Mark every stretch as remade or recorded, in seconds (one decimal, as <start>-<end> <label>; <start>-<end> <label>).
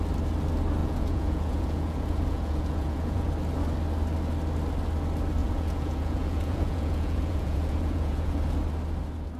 0.0-0.8 recorded; 0.8-3.3 remade; 3.3-5.4 recorded; 5.4-8.4 remade; 8.4-9.4 recorded